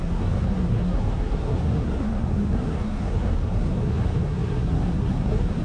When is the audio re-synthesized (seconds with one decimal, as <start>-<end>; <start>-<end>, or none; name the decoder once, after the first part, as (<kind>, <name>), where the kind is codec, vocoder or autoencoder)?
0.0-5.6 (codec, SNAC)